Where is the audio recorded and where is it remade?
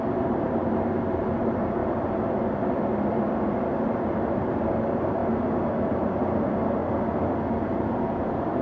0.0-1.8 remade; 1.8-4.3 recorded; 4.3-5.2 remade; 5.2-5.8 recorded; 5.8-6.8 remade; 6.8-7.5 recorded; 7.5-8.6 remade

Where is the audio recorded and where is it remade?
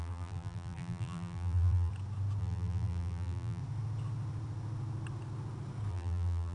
0.0-1.9 remade; 1.9-2.4 recorded; 2.4-3.6 remade; 3.6-5.9 recorded; 5.9-6.5 remade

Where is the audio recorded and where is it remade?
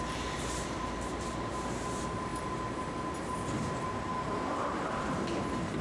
0.0-2.3 remade; 2.3-3.8 recorded; 3.8-5.8 remade